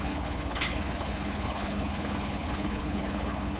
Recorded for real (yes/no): no